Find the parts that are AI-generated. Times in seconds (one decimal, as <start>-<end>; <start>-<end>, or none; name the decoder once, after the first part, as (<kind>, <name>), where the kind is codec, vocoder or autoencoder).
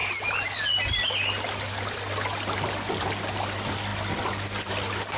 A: none